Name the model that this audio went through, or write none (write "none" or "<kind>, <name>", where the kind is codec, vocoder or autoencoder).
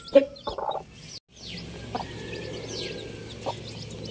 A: none